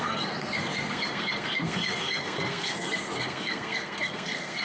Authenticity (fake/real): fake